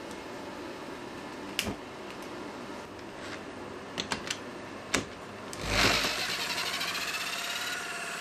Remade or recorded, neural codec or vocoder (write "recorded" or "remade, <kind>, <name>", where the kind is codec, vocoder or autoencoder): recorded